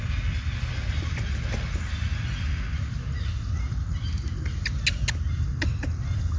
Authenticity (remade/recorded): recorded